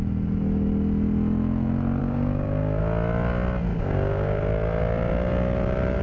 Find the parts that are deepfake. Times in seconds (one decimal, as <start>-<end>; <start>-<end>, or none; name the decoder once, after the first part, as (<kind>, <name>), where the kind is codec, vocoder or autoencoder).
2.0-2.8 (codec, DAC); 3.7-4.4